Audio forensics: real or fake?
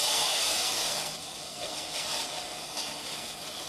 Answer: fake